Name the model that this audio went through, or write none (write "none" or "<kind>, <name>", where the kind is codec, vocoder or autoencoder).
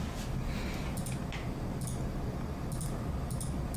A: none